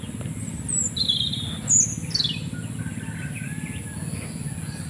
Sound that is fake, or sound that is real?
real